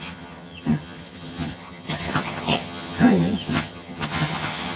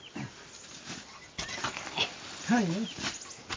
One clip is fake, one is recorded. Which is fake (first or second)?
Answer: first